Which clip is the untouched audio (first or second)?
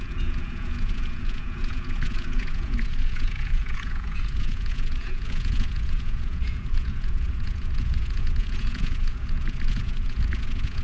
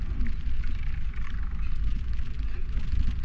second